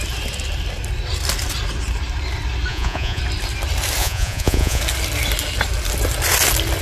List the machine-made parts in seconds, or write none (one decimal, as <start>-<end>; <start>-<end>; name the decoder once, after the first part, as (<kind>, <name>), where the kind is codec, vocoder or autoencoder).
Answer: 2.7-3.2 (vocoder, Vocos); 4.0-4.8